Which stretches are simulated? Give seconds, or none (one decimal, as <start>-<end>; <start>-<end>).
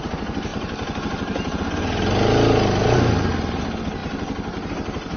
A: none